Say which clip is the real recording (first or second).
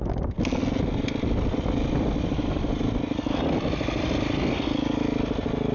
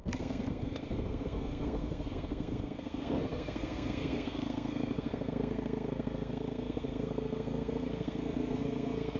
first